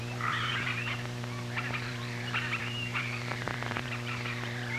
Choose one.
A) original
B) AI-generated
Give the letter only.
B